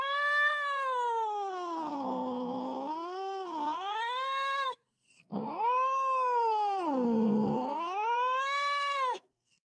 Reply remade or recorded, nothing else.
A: remade